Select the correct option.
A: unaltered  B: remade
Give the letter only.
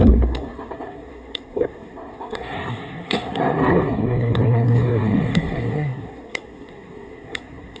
B